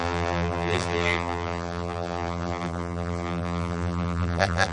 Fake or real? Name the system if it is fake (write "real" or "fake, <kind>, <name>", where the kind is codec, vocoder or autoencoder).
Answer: fake, vocoder, BigVGAN v2